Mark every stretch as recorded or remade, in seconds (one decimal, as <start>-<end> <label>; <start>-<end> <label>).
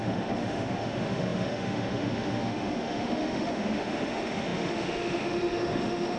0.0-6.2 remade